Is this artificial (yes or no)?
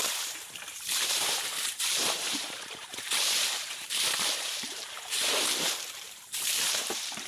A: yes